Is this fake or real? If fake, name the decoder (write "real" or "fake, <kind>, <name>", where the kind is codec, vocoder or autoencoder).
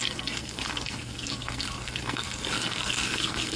fake, codec, SNAC